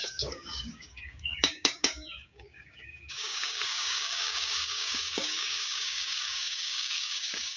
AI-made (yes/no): yes